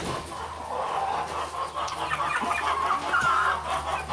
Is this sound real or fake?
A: real